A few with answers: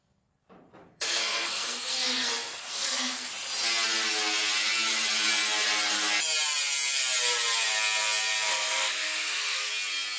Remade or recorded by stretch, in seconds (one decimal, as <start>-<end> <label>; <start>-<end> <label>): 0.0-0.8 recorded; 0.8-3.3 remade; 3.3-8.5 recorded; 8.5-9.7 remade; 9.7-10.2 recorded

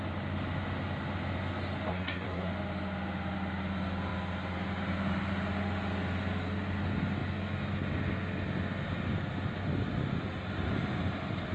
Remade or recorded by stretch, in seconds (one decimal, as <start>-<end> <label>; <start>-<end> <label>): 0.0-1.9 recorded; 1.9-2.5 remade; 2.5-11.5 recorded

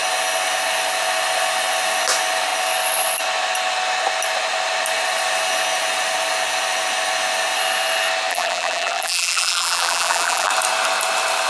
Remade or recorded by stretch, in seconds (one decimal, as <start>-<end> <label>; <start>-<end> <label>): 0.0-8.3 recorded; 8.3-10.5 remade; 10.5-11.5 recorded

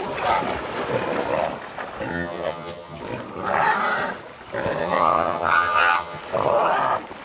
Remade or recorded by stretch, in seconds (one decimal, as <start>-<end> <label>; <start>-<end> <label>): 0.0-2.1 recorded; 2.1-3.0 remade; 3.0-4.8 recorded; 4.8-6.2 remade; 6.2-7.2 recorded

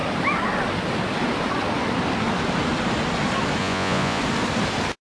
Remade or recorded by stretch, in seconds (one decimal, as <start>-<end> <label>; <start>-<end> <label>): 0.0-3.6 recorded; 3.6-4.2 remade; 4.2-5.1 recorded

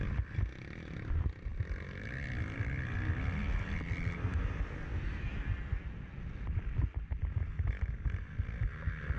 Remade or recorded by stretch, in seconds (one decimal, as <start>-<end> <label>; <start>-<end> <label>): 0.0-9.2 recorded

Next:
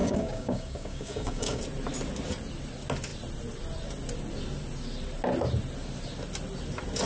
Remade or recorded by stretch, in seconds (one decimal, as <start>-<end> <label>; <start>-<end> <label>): 0.0-1.6 remade; 1.6-7.1 recorded